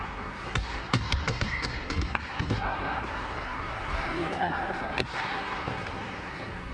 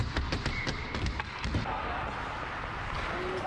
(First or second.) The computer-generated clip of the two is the first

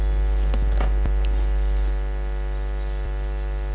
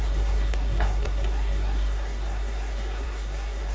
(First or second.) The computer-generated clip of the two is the second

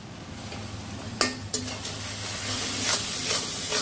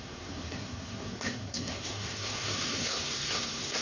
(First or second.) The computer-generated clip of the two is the second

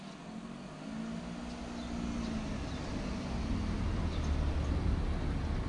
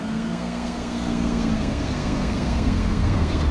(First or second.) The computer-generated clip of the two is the second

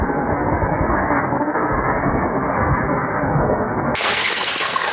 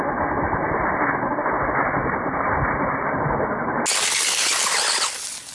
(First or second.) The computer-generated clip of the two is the first